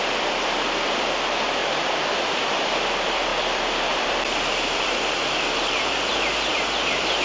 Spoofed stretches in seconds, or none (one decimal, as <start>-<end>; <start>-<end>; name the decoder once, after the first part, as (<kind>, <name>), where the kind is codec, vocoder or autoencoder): 0.0-1.6 (vocoder, BigVGAN v2); 2.4-7.2

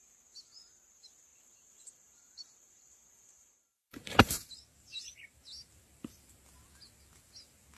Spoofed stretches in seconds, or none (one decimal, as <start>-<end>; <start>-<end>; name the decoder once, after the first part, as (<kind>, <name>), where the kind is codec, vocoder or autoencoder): 1.3-4.5 (vocoder, BigVGAN v2)